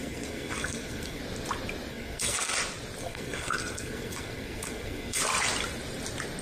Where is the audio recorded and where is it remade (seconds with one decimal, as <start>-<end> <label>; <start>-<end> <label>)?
0.0-1.2 remade; 1.2-1.9 recorded; 1.9-2.5 remade; 2.5-3.0 recorded; 3.0-5.2 remade; 5.2-6.4 recorded